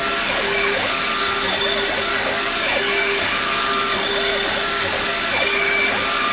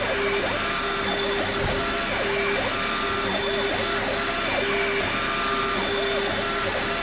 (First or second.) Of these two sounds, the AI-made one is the first